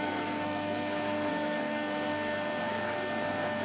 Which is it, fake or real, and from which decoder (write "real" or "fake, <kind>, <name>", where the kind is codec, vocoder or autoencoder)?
fake, codec, SNAC